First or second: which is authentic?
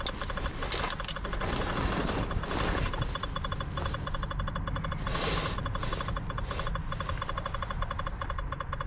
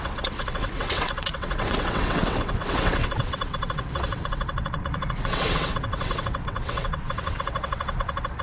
first